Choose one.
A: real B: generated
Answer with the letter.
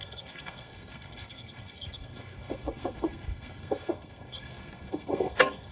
B